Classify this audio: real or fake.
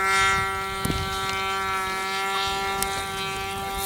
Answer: real